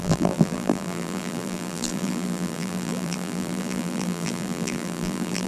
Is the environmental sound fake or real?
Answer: fake